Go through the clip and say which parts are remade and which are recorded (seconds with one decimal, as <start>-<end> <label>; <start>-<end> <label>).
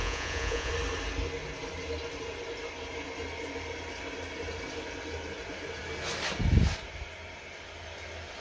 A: 0.0-0.7 remade; 0.7-8.4 recorded